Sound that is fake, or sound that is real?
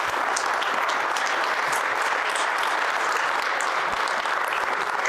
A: fake